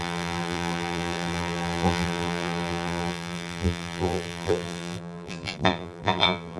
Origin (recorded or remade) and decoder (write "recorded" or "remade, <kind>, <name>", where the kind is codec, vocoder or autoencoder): remade, vocoder, BigVGAN v2